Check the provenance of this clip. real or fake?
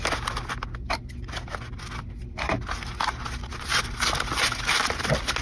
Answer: real